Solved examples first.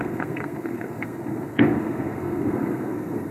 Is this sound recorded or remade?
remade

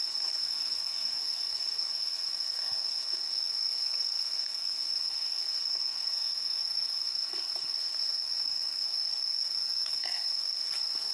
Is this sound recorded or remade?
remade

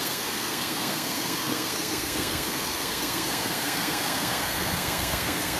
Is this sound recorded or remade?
remade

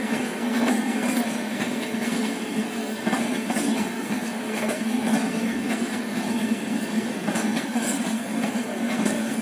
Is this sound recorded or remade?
remade